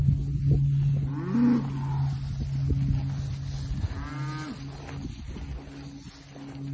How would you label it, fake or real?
real